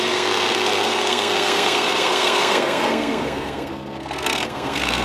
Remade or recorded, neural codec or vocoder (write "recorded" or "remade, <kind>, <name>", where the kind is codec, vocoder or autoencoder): remade, codec, SNAC